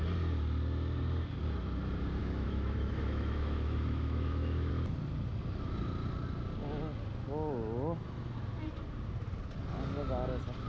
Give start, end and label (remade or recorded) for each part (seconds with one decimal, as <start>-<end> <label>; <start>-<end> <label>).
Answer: 0.0-2.2 recorded; 2.2-4.7 remade; 4.7-10.7 recorded